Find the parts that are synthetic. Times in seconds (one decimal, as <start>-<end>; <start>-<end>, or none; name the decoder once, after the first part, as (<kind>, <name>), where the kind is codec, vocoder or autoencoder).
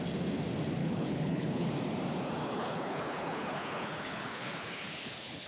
0.8-1.7 (codec, HILCodec); 2.4-5.5